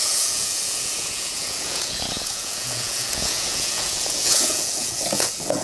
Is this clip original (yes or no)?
no